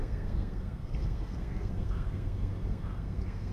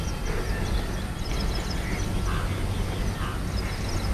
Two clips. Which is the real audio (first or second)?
second